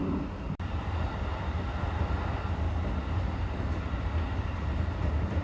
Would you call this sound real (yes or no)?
yes